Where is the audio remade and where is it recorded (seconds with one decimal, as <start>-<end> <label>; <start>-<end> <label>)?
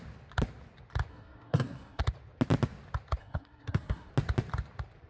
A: 0.0-1.1 recorded; 1.1-2.0 remade; 2.0-3.2 recorded; 3.2-4.1 remade; 4.1-5.1 recorded